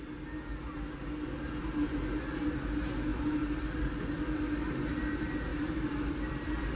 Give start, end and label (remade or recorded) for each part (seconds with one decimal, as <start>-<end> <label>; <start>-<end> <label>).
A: 0.0-5.5 recorded; 5.5-6.8 remade